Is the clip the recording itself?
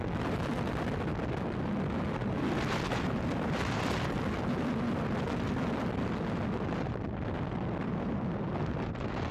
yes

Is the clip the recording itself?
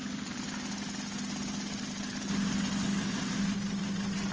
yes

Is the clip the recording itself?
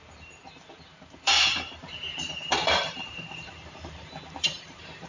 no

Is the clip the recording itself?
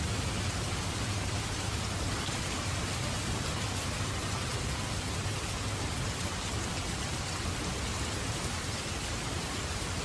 yes